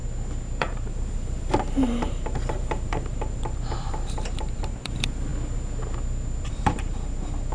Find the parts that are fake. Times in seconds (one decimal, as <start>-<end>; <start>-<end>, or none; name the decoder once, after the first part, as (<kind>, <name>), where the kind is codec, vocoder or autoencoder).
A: 0.6-5.3 (vocoder, BigVGAN v2); 6.5-7.5